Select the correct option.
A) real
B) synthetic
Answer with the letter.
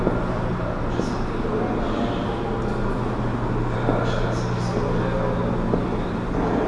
A